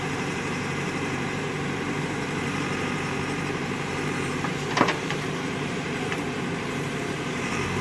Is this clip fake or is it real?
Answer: fake